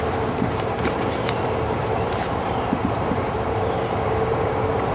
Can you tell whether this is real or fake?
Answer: fake